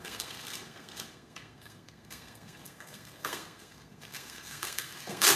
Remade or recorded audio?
remade